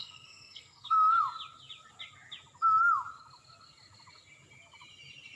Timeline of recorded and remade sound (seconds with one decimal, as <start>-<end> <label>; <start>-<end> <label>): 0.0-1.2 remade; 1.2-5.4 recorded